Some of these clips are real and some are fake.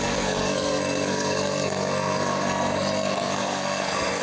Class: fake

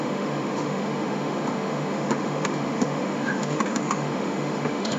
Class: fake